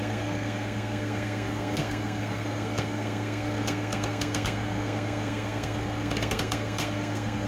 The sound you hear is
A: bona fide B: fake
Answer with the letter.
B